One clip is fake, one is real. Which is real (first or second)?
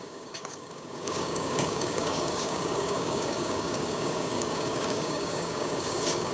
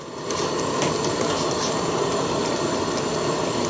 second